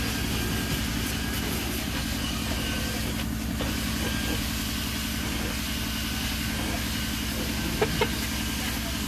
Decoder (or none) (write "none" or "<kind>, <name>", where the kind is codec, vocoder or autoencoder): none